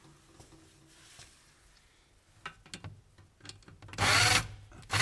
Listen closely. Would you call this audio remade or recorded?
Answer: recorded